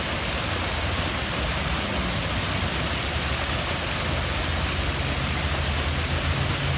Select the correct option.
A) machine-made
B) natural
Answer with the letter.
B